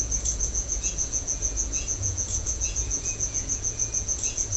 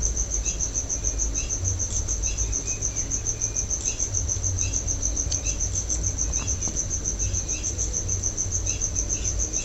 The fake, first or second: first